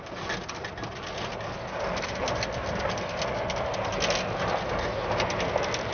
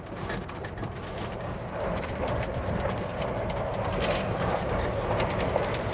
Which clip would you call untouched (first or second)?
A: first